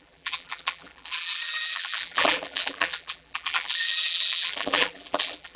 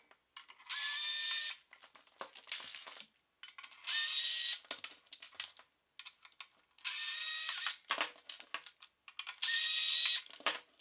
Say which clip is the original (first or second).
second